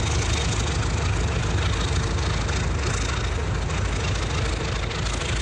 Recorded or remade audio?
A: recorded